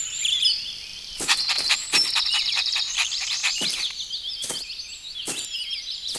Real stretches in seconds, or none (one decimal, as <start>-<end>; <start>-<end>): 0.0-0.9; 4.6-6.2